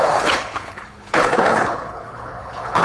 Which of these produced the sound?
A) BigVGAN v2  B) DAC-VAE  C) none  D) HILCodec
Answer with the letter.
D